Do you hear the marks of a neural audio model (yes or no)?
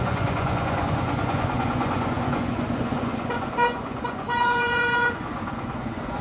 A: yes